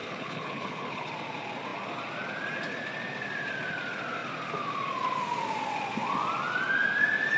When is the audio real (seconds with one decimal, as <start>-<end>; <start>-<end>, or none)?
1.1-7.4

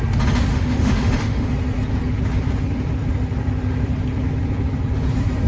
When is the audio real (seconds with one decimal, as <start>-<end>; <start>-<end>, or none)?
0.0-0.5; 1.5-5.5

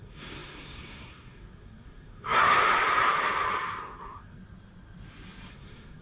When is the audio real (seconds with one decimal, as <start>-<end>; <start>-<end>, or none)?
2.6-3.8; 4.4-5.5